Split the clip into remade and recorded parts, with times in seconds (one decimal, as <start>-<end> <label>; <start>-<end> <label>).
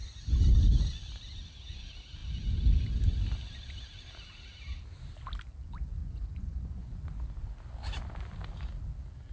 0.0-6.0 recorded; 6.0-6.9 remade; 6.9-9.3 recorded